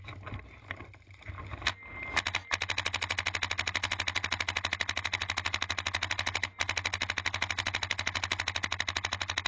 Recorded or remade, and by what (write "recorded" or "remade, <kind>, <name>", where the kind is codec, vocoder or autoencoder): recorded